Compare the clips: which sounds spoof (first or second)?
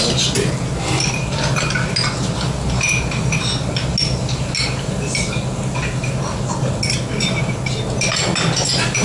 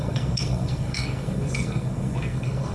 second